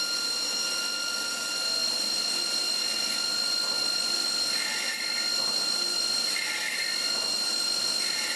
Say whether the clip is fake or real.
real